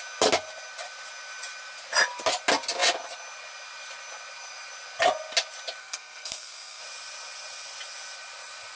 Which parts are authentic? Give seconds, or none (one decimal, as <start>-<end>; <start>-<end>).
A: 0.0-5.8; 6.8-8.8